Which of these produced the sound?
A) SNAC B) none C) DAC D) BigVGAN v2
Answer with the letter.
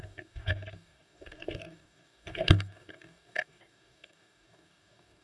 C